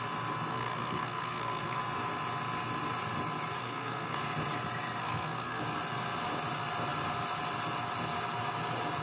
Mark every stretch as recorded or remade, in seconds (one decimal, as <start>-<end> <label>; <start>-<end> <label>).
0.0-0.5 recorded; 0.5-1.8 remade; 1.8-3.6 recorded; 3.6-4.2 remade; 4.2-5.0 recorded; 5.0-5.6 remade; 5.6-9.0 recorded